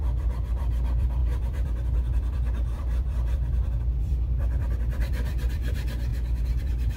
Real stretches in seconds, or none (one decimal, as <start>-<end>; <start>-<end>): 6.1-6.6